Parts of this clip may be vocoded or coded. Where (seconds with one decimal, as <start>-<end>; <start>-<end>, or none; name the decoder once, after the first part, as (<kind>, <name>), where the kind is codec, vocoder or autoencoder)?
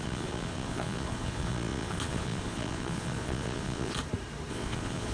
0.0-4.0 (vocoder, Vocos); 4.5-5.1